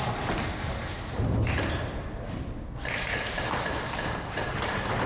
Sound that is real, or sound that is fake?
real